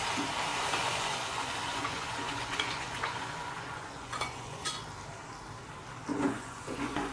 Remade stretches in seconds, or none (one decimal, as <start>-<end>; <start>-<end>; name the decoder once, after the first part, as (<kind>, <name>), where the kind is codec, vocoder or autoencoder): 0.5-4.8 (vocoder, Vocos); 6.1-7.1